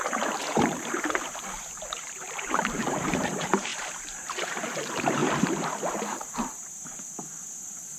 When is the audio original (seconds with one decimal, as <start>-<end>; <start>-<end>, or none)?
5.2-5.9